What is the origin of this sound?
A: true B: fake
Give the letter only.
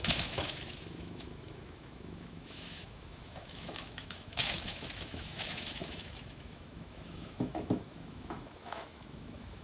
B